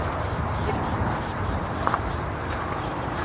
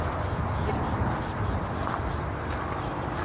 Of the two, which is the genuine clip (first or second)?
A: second